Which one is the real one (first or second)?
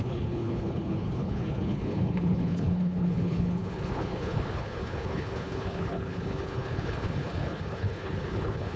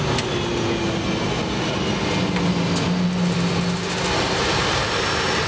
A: second